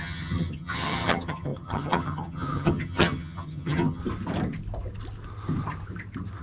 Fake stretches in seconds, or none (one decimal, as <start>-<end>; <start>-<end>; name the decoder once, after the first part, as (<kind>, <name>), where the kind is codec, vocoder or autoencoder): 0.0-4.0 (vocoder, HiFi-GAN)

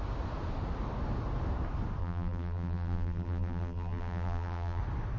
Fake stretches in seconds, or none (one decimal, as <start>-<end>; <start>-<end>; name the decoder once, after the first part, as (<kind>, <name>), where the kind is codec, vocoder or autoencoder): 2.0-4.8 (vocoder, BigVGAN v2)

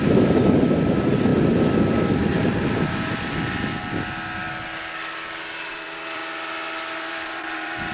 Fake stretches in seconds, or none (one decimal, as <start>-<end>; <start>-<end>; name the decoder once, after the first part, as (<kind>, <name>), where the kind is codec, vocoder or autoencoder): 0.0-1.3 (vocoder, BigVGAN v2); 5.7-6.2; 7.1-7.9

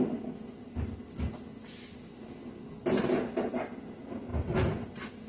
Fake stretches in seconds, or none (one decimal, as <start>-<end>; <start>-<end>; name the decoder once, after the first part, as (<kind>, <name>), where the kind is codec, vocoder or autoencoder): none

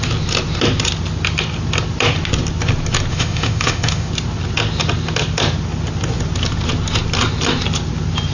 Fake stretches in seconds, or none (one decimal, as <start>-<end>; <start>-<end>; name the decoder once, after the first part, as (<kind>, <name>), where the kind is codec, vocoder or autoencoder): 3.1-4.1 (autoencoder, DAC-VAE)

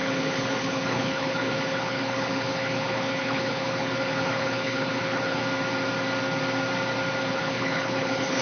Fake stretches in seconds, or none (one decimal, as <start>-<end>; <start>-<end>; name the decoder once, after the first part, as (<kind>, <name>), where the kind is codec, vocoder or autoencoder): 0.0-5.4 (codec, HILCodec); 7.3-8.4

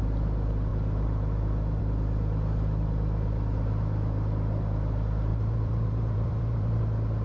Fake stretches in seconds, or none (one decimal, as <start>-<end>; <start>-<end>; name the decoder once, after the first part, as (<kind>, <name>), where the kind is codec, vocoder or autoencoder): 5.3-6.8 (vocoder, BigVGAN v2)